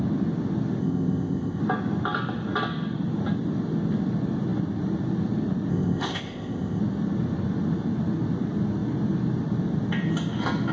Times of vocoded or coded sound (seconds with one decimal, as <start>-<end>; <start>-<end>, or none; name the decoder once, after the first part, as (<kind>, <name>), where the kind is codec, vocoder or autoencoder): 0.8-1.6 (codec, ZipCodec); 5.7-6.8